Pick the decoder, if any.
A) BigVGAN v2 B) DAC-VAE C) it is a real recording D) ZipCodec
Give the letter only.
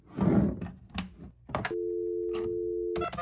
C